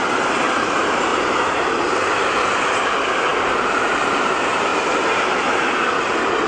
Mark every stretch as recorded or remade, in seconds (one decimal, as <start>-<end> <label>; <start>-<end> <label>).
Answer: 0.0-1.1 recorded; 1.1-1.7 remade; 1.7-3.3 recorded; 3.3-4.3 remade; 4.3-6.5 recorded